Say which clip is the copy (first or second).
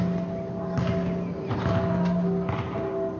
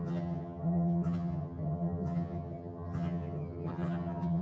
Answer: second